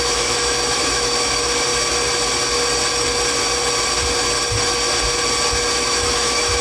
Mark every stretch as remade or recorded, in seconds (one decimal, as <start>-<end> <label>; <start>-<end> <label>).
0.0-1.7 remade; 1.7-5.7 recorded; 5.7-6.6 remade